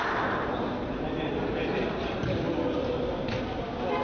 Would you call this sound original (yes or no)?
yes